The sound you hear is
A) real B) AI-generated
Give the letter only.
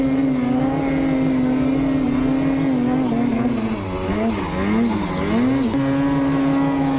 A